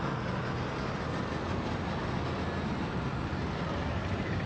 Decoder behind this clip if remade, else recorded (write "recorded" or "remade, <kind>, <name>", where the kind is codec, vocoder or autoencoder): recorded